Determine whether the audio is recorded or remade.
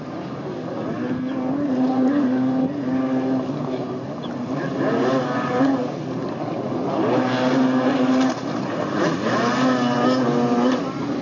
recorded